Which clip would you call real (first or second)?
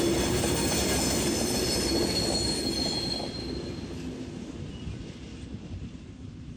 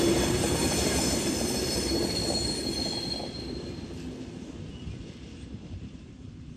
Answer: first